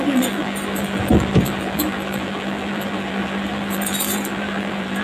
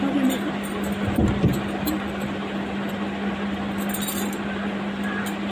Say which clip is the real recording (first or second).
second